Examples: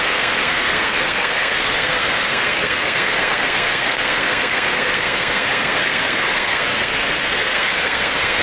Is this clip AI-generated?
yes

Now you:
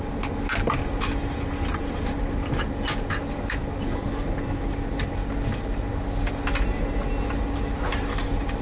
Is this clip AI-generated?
no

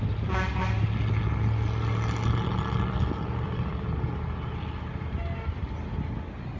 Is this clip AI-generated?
no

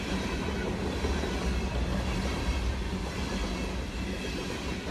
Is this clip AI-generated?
no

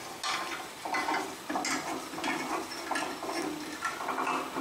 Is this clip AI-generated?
no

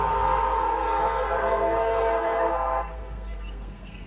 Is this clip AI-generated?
yes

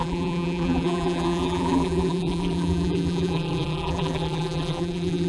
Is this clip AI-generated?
yes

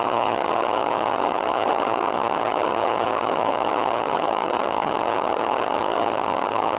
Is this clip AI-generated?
yes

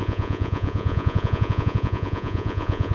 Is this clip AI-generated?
yes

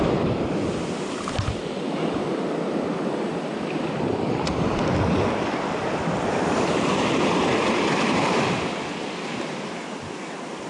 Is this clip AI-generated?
yes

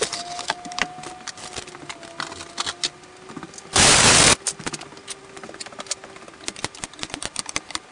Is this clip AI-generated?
no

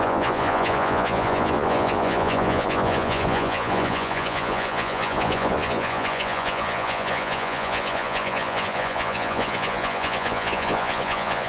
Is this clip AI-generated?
yes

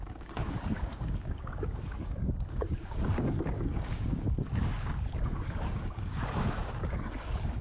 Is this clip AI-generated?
yes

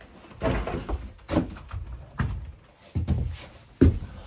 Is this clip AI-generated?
no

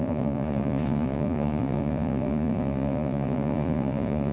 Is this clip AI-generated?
yes